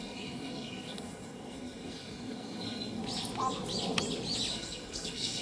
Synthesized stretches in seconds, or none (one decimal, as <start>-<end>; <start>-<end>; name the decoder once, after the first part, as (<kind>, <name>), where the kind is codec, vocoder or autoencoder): 0.0-3.0 (codec, SNAC); 4.5-5.4